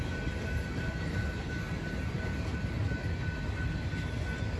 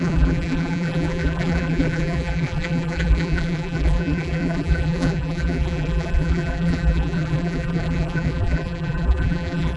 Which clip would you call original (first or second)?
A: first